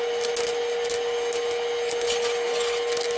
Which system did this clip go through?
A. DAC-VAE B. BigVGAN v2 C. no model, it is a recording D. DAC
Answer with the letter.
C